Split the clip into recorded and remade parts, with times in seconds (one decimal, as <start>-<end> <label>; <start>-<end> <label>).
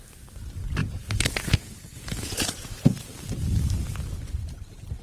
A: 0.0-0.8 recorded; 0.8-3.1 remade; 3.1-5.0 recorded